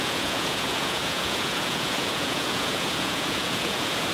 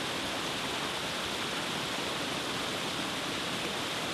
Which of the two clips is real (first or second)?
second